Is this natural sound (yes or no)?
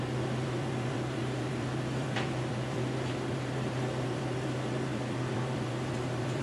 no